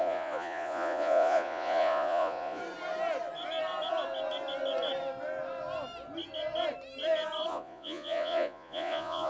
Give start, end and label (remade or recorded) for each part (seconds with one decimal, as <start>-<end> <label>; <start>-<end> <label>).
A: 0.0-2.6 remade; 2.6-7.5 recorded; 7.5-9.3 remade